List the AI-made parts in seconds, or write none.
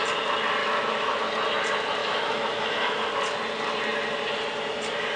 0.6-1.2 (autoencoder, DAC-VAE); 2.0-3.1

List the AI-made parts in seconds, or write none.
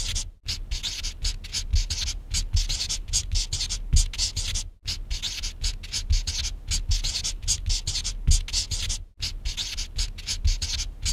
none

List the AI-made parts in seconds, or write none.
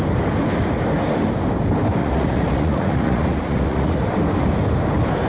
2.0-4.1 (vocoder, Vocos)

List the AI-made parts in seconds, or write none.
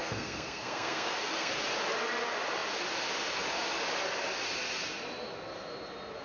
0.0-1.5 (codec, SNAC)